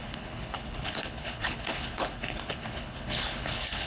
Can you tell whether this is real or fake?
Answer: fake